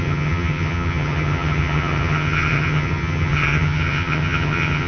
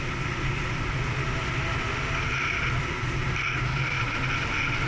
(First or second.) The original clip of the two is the second